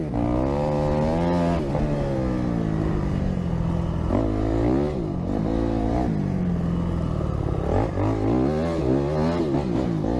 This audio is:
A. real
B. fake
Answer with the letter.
A